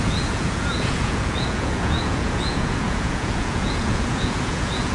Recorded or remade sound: remade